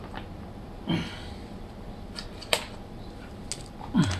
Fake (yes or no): no